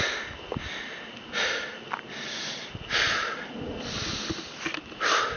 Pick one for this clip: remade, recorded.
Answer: recorded